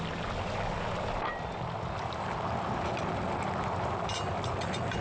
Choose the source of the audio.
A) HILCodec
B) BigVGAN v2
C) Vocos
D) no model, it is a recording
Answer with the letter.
D